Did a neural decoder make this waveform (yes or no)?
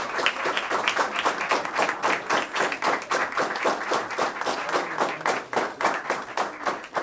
no